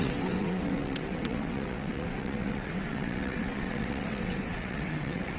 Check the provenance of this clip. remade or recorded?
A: remade